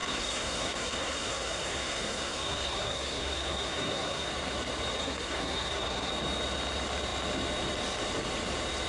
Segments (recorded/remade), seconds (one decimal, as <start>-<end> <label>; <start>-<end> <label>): 0.0-4.3 remade; 4.3-5.0 recorded; 5.0-6.1 remade; 6.1-8.9 recorded